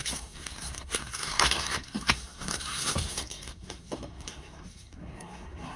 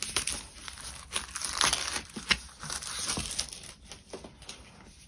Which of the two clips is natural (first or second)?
second